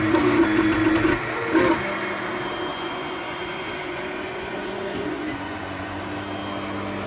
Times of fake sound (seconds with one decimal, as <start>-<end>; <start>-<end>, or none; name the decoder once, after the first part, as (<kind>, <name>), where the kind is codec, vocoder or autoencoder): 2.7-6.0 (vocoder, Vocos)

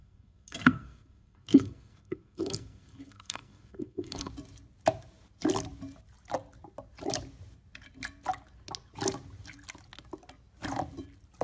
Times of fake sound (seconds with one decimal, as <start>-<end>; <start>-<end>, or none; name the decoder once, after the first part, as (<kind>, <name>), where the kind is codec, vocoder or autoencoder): 0.0-4.3 (codec, SNAC)

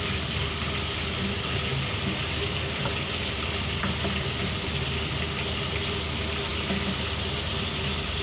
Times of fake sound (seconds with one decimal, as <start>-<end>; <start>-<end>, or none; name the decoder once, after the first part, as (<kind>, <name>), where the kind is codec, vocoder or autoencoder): 1.7-4.4 (vocoder, BigVGAN v2)

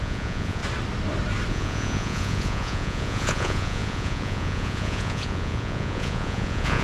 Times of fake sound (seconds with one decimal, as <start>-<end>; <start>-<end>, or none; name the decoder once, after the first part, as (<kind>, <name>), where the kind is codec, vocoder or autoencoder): 0.0-0.6 (vocoder, Vocos); 1.5-6.8

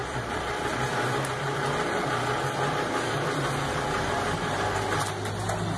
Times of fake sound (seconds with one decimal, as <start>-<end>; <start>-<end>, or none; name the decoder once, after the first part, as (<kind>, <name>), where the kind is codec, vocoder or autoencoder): 0.0-0.7 (vocoder, BigVGAN v2)